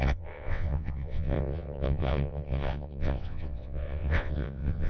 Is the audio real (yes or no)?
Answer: no